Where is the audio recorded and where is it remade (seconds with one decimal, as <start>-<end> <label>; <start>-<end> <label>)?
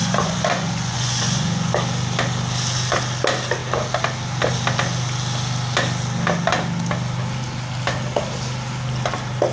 0.0-1.7 remade; 1.7-9.5 recorded